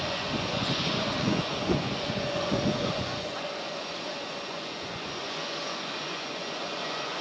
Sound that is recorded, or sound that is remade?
remade